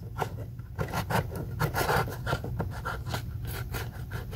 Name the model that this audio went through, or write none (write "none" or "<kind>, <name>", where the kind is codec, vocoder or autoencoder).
none